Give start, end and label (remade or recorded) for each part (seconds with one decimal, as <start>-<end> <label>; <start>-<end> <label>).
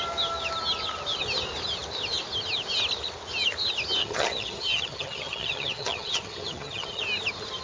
0.0-4.0 recorded; 4.0-7.0 remade; 7.0-7.6 recorded